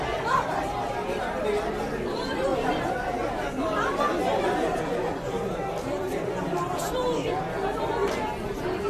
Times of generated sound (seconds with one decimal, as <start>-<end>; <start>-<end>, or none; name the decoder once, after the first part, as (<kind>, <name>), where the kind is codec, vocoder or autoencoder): none